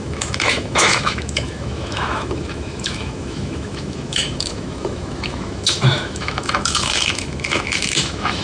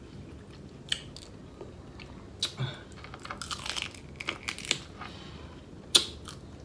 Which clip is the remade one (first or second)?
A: first